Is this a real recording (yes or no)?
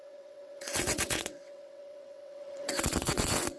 no